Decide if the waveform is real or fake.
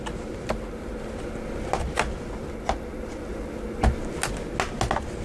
real